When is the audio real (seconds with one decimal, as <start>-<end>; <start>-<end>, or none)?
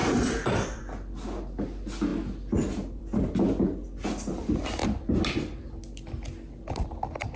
0.8-7.4